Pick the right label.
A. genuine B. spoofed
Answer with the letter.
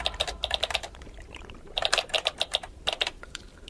B